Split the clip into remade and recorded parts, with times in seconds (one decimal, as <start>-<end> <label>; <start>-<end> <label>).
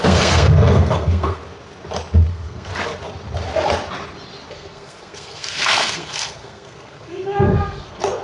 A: 0.0-1.4 remade; 1.4-2.3 recorded; 2.3-2.7 remade; 2.7-4.5 recorded; 4.5-8.2 remade